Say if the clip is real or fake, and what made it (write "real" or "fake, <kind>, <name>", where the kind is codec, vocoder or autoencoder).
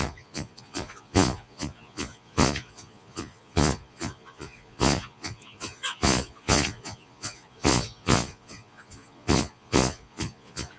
fake, vocoder, Vocos